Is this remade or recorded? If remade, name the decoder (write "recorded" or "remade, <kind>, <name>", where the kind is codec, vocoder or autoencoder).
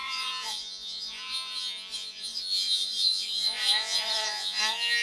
remade, vocoder, Vocos